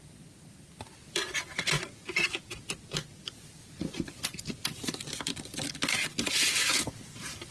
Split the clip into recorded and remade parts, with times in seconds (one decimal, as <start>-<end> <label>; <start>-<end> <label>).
0.0-7.5 recorded